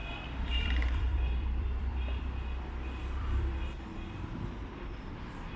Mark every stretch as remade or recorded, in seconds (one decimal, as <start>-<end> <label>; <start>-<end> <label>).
0.0-2.2 remade; 2.2-3.0 recorded; 3.0-3.6 remade; 3.6-5.6 recorded